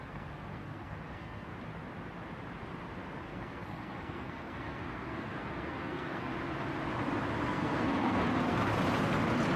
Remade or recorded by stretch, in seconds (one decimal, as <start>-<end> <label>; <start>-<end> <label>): 0.0-1.5 remade; 1.5-3.2 recorded; 3.2-6.3 remade; 6.3-7.4 recorded; 7.4-8.7 remade; 8.7-9.6 recorded

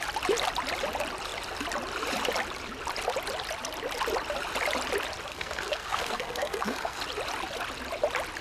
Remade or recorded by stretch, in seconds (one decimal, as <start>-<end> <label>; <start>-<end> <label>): 0.0-5.3 recorded; 5.3-7.0 remade; 7.0-8.4 recorded

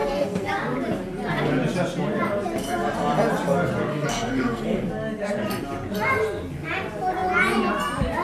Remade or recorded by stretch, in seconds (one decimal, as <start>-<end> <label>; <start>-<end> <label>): 0.0-0.5 remade; 0.5-3.9 recorded; 3.9-4.9 remade; 4.9-8.2 recorded